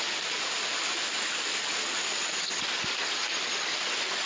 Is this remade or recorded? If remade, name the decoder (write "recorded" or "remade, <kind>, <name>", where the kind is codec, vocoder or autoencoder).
recorded